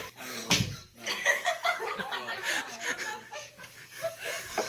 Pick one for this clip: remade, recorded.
remade